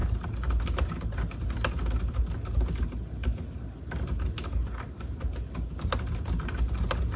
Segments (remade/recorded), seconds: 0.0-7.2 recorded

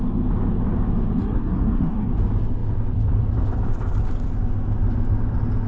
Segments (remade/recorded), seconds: 0.0-1.2 recorded; 1.2-2.1 remade; 2.1-5.7 recorded

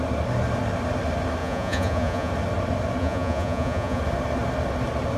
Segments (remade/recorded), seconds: 0.0-1.4 recorded; 1.4-2.3 remade; 2.3-3.0 recorded; 3.0-4.0 remade; 4.0-5.2 recorded

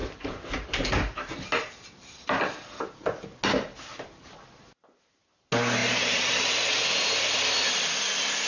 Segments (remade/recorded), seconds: 0.0-2.1 remade; 2.1-5.8 recorded; 5.8-6.4 remade; 6.4-8.5 recorded

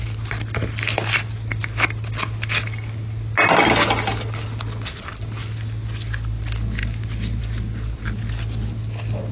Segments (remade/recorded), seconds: 0.0-9.3 recorded

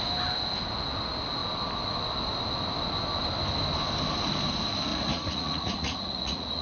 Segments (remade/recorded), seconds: 0.0-4.9 recorded; 4.9-6.6 remade

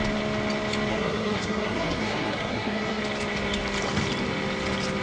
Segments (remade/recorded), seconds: 0.0-0.9 recorded; 0.9-3.0 remade; 3.0-5.0 recorded

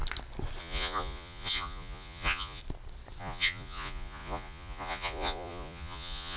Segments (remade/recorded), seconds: 0.0-0.6 recorded; 0.6-2.6 remade; 2.6-3.2 recorded; 3.2-6.4 remade